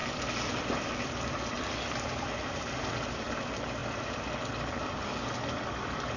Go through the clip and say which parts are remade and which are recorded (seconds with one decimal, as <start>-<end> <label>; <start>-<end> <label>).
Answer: 0.0-3.4 remade; 3.4-3.8 recorded; 3.8-4.4 remade; 4.4-6.2 recorded